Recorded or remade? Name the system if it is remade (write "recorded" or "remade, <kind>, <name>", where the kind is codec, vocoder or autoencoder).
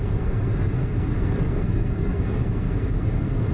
remade, codec, SNAC